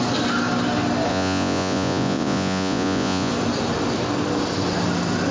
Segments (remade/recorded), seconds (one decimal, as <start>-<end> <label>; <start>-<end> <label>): 0.0-1.1 recorded; 1.1-3.3 remade; 3.3-5.3 recorded